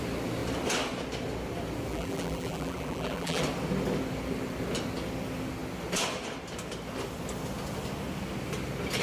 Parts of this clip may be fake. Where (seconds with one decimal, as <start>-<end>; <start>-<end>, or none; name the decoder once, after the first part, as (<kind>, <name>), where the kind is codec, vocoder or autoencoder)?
1.9-3.4 (vocoder, BigVGAN v2)